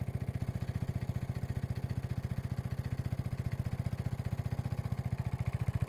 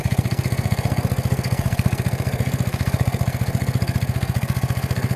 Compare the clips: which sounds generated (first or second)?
second